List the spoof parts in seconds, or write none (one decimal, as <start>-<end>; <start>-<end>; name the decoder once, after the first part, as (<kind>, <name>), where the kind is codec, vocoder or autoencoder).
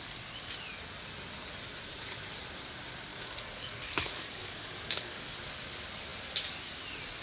3.1-5.2 (codec, DAC)